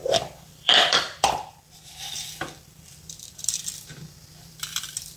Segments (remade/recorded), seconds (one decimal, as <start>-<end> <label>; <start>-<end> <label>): 0.0-5.2 remade